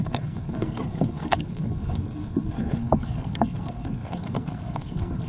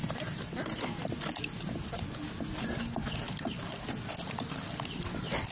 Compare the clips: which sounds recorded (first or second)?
second